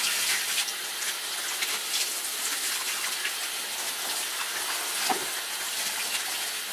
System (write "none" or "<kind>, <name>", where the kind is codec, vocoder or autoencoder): none